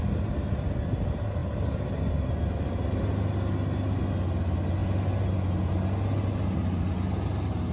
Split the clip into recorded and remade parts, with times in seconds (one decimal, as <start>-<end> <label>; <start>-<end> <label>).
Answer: 0.0-7.7 recorded